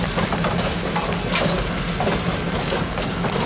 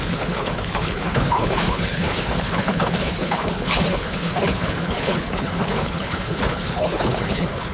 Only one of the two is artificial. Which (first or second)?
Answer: second